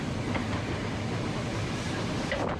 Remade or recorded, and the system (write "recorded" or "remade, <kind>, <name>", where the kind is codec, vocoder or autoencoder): recorded